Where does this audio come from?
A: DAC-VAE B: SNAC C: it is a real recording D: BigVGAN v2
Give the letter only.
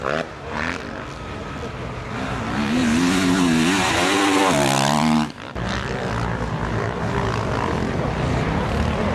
C